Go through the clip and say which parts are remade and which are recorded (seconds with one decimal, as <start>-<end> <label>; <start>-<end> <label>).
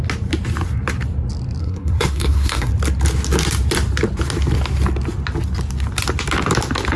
0.0-1.6 recorded; 1.6-2.7 remade; 2.7-7.0 recorded